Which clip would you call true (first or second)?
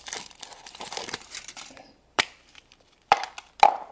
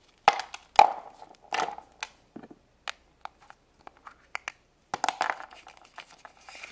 second